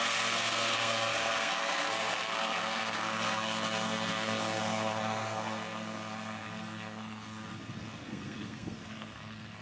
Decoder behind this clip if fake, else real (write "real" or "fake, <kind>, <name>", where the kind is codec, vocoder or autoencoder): fake, codec, SNAC